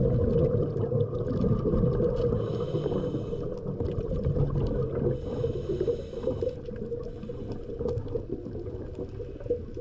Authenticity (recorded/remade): recorded